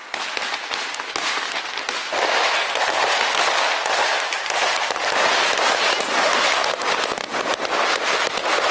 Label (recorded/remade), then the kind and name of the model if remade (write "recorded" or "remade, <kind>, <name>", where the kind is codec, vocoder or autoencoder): recorded